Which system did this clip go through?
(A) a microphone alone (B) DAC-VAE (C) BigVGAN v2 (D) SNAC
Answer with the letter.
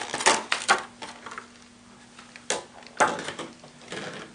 A